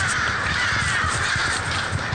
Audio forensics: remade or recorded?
recorded